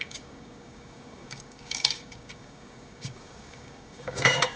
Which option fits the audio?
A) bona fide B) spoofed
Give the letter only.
B